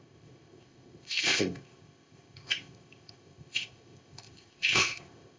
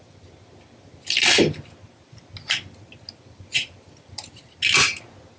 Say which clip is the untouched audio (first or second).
second